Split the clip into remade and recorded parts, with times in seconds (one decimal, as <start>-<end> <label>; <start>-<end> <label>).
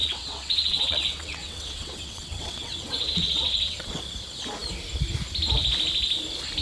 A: 0.0-4.0 remade; 4.0-6.6 recorded